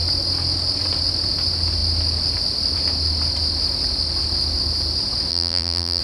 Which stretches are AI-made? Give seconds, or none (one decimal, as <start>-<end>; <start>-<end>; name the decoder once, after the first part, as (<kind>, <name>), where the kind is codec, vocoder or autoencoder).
5.3-6.0 (vocoder, BigVGAN v2)